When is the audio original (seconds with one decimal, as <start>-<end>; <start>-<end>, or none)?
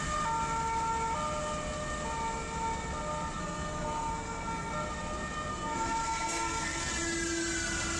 0.0-3.4; 4.7-5.5; 6.9-8.0